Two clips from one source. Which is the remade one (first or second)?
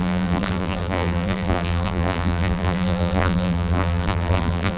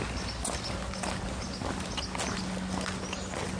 first